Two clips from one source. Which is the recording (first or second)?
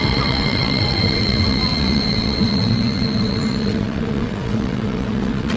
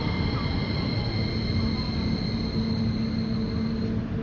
second